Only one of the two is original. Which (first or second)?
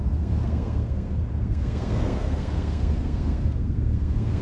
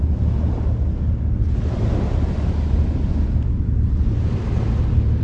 second